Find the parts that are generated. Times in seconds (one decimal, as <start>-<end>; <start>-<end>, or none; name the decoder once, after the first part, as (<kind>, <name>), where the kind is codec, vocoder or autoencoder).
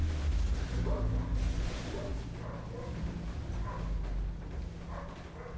none